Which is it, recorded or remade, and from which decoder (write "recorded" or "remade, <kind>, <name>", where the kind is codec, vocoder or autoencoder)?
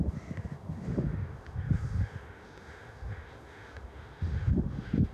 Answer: remade, autoencoder, DAC-VAE